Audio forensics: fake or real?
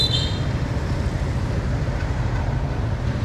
real